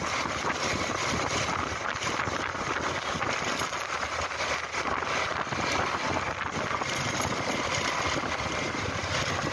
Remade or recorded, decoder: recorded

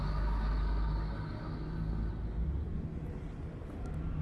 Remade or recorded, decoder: recorded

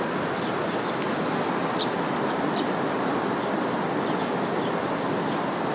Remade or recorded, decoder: recorded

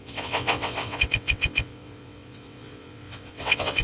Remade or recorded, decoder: remade, vocoder, WaveNeXt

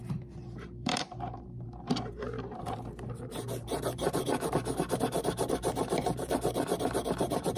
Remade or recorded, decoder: remade, vocoder, BigVGAN v2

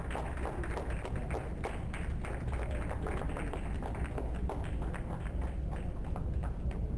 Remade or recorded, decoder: recorded